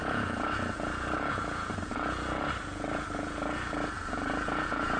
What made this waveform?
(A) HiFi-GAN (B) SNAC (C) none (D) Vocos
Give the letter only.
D